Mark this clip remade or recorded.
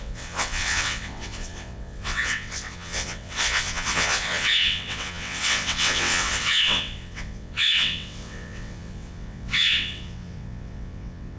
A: remade